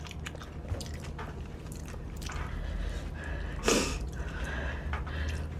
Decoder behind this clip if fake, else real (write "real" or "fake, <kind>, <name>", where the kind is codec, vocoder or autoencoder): real